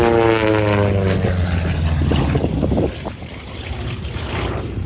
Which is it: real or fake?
real